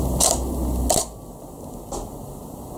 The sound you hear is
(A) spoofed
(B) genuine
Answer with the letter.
B